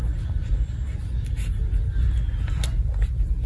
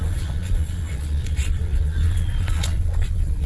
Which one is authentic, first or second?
first